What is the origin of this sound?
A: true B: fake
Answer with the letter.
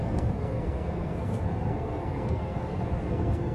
B